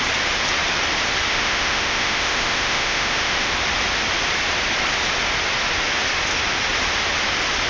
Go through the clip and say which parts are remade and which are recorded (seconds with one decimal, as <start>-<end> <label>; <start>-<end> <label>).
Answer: 0.0-1.3 recorded; 1.3-3.5 remade; 3.5-7.7 recorded